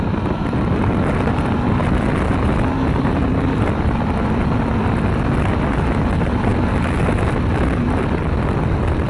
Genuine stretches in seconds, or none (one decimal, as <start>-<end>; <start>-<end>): 0.0-9.1